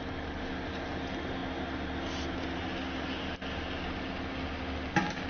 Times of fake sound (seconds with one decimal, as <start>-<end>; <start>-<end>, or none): none